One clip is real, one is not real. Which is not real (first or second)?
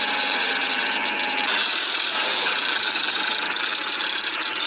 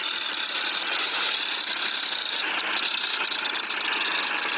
first